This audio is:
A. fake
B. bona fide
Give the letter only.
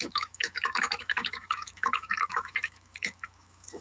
A